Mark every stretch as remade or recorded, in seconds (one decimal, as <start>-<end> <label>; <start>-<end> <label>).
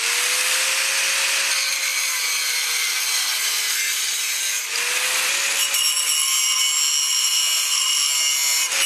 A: 0.0-1.9 recorded; 1.9-4.4 remade; 4.4-7.1 recorded; 7.1-7.9 remade; 7.9-8.9 recorded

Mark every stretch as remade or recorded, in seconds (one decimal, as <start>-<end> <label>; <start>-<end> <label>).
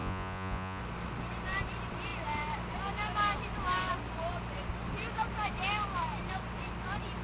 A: 0.0-0.8 remade; 0.8-7.2 recorded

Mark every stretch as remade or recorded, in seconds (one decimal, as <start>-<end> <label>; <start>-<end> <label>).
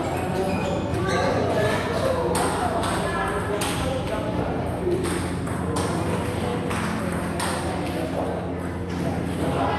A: 0.0-0.9 recorded; 0.9-2.1 remade; 2.1-9.8 recorded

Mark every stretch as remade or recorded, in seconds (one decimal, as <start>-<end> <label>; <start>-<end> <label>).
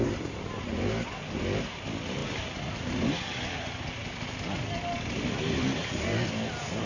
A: 0.0-6.9 recorded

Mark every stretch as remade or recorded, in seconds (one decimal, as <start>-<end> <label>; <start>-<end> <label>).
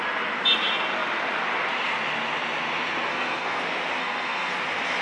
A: 0.0-3.1 recorded; 3.1-3.6 remade; 3.6-4.0 recorded; 4.0-4.5 remade; 4.5-5.0 recorded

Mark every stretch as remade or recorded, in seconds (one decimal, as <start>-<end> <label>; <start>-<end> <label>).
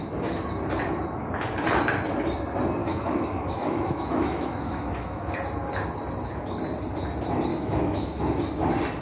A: 0.0-2.8 recorded; 2.8-5.3 remade; 5.3-7.5 recorded; 7.5-8.4 remade; 8.4-9.0 recorded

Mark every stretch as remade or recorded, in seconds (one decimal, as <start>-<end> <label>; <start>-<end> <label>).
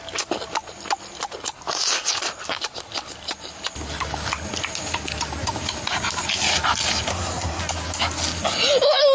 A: 0.0-7.1 recorded; 7.1-7.6 remade; 7.6-9.1 recorded